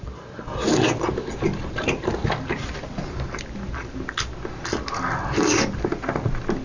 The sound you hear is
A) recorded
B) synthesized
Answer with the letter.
A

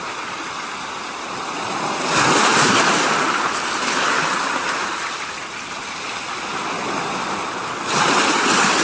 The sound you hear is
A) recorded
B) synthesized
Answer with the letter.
A